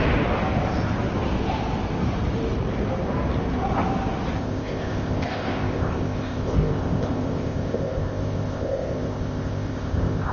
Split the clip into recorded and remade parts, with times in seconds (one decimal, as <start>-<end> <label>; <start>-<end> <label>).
0.0-4.4 recorded; 4.4-10.3 remade